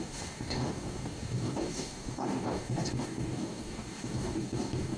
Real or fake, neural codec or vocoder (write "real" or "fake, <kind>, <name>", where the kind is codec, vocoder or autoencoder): fake, codec, DAC